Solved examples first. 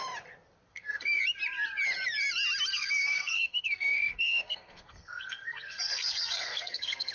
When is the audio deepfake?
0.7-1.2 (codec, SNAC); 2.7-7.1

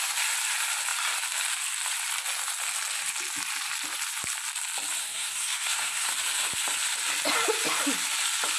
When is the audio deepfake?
5.0-6.1 (codec, SNAC)

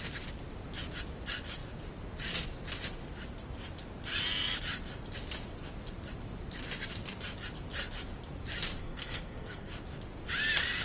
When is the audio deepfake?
8.8-9.7 (codec, SNAC)

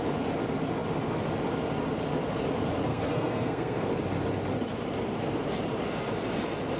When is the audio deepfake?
2.9-3.9 (codec, SNAC)

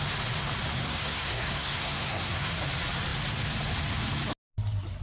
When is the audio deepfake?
0.7-2.5 (codec, SNAC)

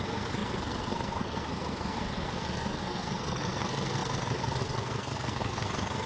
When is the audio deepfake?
0.0-6.1 (codec, SNAC)

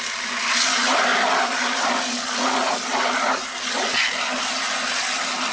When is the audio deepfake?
none